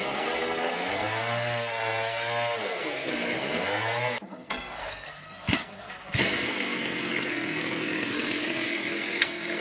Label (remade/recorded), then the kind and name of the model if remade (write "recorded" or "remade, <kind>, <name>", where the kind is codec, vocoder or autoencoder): remade, codec, SNAC